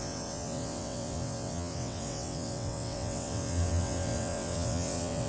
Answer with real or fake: fake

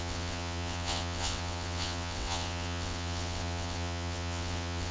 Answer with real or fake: fake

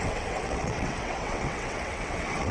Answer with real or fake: fake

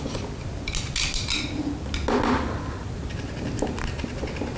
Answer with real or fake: real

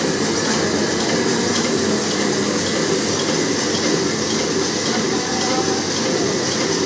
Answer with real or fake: real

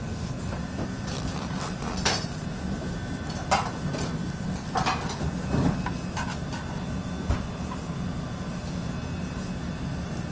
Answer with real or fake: real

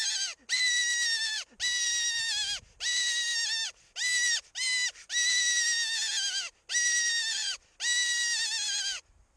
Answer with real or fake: real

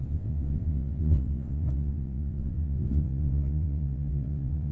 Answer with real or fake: fake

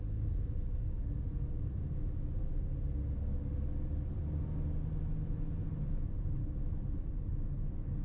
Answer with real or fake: real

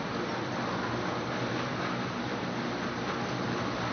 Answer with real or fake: real